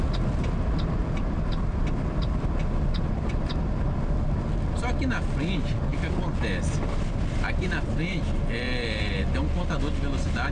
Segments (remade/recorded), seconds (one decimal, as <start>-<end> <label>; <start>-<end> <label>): 0.0-1.0 recorded; 1.0-4.4 remade; 4.4-5.9 recorded; 5.9-9.2 remade; 9.2-10.5 recorded